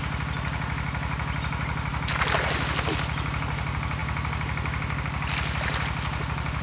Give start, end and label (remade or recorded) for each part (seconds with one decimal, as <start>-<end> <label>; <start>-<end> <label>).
0.0-6.6 recorded